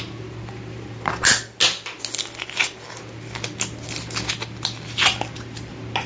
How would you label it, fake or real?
real